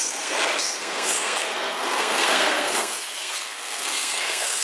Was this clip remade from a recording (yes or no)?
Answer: yes